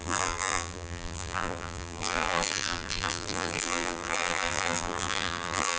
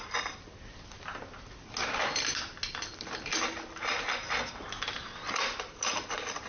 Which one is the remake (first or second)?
first